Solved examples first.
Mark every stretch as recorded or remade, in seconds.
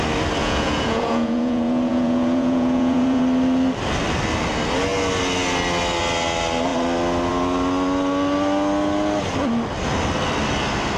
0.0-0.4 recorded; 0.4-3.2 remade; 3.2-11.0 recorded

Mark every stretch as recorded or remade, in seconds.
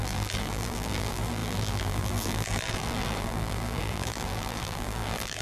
0.0-5.4 remade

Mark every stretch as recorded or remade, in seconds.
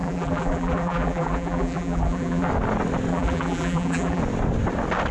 0.0-2.5 remade; 2.5-3.1 recorded; 3.1-4.2 remade; 4.2-5.1 recorded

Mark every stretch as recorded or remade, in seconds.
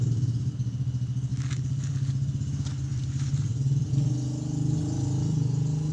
0.0-2.9 recorded; 2.9-3.9 remade; 3.9-5.9 recorded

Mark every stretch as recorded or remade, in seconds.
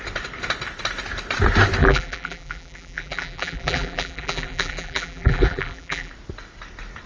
0.0-1.8 recorded; 1.8-6.1 remade; 6.1-7.1 recorded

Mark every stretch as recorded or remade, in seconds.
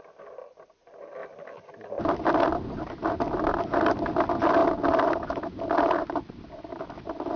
0.0-7.4 recorded